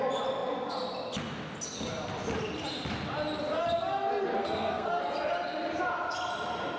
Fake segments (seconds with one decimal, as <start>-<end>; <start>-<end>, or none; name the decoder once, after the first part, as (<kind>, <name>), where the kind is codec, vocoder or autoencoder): 4.4-5.0 (codec, SNAC)